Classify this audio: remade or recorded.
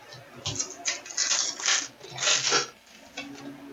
recorded